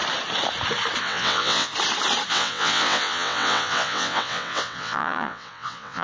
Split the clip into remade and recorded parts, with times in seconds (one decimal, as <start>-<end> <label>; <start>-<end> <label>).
0.0-1.0 recorded; 1.0-1.7 remade; 1.7-2.3 recorded; 2.3-6.0 remade